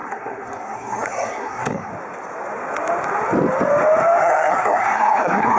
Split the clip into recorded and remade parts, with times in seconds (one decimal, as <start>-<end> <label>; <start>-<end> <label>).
0.0-1.9 remade; 1.9-4.2 recorded; 4.2-5.6 remade